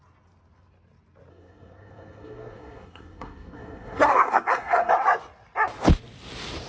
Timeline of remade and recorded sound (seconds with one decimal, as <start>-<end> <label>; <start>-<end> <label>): 0.0-1.3 recorded; 1.3-4.9 remade; 4.9-6.7 recorded